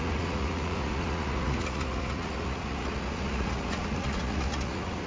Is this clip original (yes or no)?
no